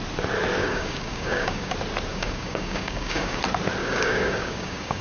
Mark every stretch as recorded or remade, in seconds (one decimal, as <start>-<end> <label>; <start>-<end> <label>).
0.0-0.6 recorded; 0.6-1.7 remade; 1.7-2.1 recorded; 2.1-3.4 remade; 3.4-3.8 recorded; 3.8-5.0 remade